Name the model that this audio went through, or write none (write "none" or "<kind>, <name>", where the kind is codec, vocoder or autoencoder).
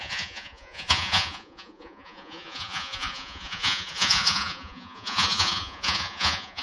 vocoder, Vocos